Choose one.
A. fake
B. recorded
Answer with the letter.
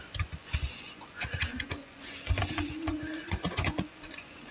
A